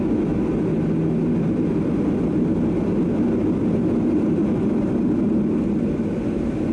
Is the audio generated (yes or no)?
no